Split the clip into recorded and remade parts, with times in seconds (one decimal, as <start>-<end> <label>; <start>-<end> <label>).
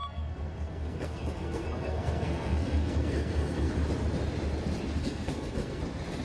0.0-3.7 remade; 3.7-5.0 recorded; 5.0-5.8 remade; 5.8-6.2 recorded